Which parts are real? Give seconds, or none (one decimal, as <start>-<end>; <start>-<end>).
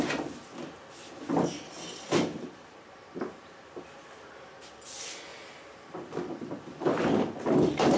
0.0-2.3; 3.8-5.3; 6.9-8.0